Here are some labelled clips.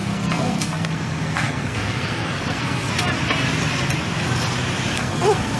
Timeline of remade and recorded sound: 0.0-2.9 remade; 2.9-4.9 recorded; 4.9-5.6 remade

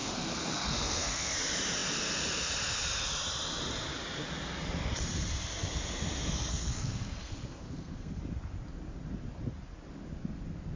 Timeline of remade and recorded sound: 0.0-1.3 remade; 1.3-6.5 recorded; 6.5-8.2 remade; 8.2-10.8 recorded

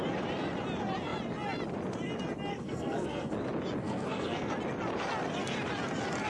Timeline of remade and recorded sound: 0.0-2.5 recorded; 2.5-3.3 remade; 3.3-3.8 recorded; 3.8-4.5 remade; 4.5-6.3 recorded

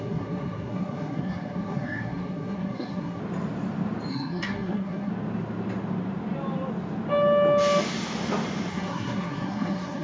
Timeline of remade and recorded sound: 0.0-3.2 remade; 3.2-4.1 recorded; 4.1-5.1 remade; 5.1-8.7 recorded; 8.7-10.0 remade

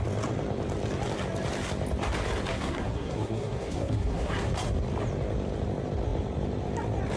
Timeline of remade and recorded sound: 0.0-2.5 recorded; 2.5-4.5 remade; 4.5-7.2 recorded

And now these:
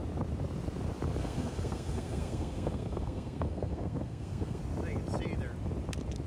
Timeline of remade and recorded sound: 0.0-1.2 recorded; 1.2-4.6 remade; 4.6-6.3 recorded

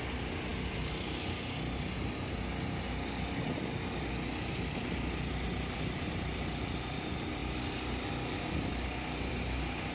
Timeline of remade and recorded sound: 0.0-9.9 recorded

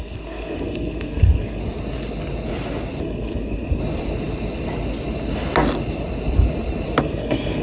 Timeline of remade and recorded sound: 0.0-1.6 remade; 1.6-3.0 recorded; 3.0-3.8 remade; 3.8-7.0 recorded; 7.0-7.6 remade